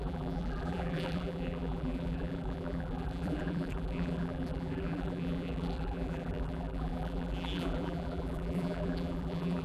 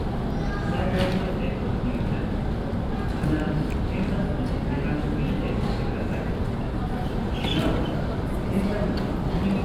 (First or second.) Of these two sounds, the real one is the second